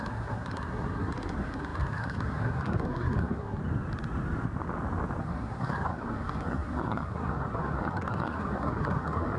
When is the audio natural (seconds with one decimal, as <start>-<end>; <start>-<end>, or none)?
3.6-5.2